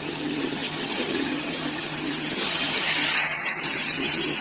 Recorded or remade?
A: remade